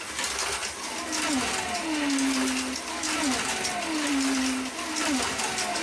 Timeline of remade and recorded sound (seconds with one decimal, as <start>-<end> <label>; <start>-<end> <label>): 0.0-5.8 recorded